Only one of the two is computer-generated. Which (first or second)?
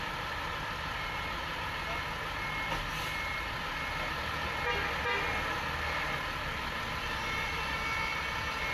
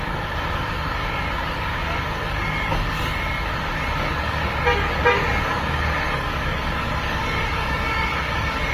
second